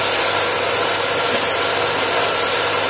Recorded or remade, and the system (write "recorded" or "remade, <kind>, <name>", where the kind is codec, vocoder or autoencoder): recorded